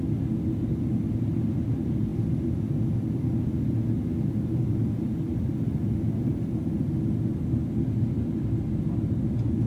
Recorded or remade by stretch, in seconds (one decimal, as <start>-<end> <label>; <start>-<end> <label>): 0.0-9.7 recorded